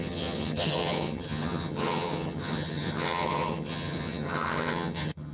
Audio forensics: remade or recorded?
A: remade